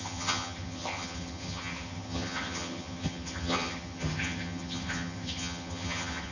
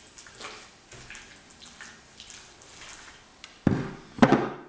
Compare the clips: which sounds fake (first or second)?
first